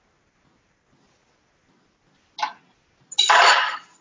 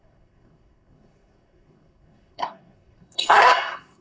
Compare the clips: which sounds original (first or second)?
first